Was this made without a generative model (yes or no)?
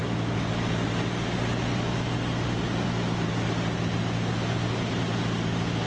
yes